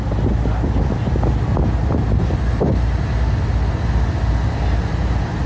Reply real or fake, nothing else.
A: real